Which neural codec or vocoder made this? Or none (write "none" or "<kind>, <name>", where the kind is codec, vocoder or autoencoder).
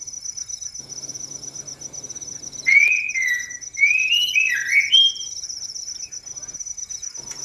none